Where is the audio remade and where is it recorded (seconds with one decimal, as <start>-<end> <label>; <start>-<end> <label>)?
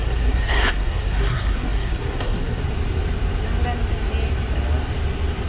0.0-2.6 remade; 2.6-5.5 recorded